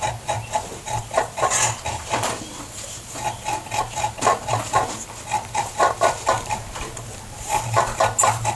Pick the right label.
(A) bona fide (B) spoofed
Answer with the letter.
A